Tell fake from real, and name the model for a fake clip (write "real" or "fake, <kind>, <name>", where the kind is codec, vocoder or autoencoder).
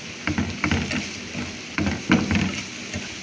real